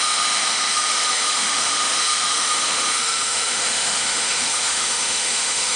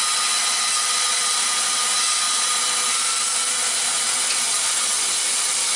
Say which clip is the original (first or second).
second